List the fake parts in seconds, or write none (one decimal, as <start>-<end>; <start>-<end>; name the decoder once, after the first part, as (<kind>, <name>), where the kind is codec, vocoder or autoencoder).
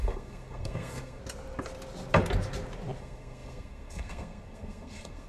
0.0-1.2 (codec, SNAC); 3.0-5.3